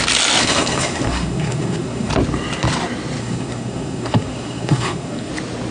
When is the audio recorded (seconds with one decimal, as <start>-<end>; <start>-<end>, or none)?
0.0-0.4; 2.1-3.2; 5.3-5.7